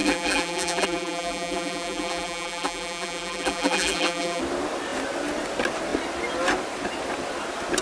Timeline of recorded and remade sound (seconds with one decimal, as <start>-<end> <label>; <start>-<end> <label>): 0.0-4.4 remade; 4.4-7.8 recorded